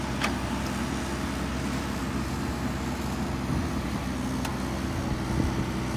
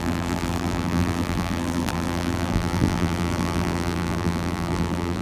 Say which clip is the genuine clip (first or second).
first